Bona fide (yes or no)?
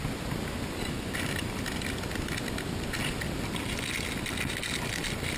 yes